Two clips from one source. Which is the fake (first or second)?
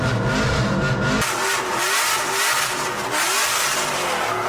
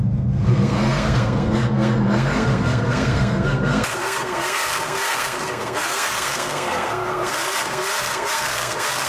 second